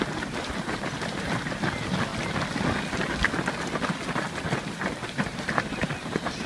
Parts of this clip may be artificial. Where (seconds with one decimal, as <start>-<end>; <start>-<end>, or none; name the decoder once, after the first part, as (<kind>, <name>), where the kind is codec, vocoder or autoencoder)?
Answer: 5.0-5.9 (vocoder, BigVGAN v2)